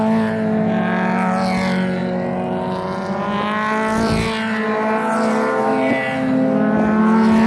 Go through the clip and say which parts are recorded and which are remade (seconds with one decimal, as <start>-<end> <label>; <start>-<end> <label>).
0.0-7.5 recorded